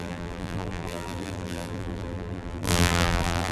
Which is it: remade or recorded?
remade